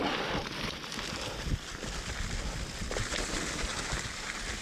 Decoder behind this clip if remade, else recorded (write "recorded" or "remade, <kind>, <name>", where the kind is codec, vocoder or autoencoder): recorded